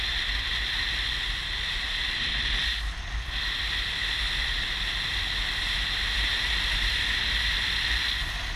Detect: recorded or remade recorded